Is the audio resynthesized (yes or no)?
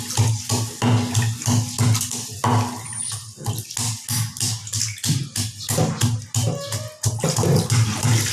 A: no